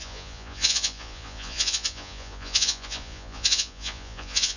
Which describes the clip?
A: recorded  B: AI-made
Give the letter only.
B